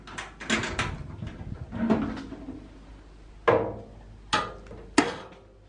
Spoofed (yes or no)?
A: no